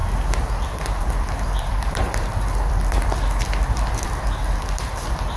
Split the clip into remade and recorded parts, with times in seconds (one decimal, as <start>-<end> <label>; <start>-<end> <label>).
0.0-1.0 recorded; 1.0-5.4 remade